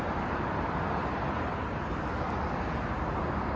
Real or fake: real